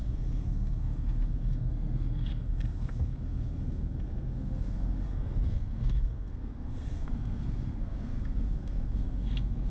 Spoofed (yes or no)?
yes